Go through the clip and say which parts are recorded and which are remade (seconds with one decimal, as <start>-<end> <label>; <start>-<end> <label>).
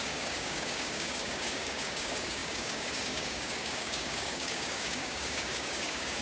0.0-6.2 remade